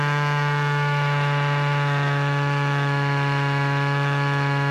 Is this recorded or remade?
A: remade